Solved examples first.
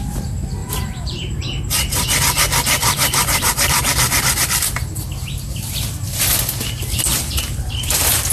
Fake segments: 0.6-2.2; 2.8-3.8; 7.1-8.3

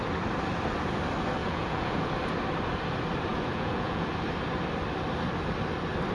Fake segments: 1.4-2.1; 3.3-4.1

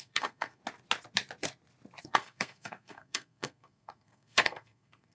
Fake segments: 0.0-0.6; 2.0-5.1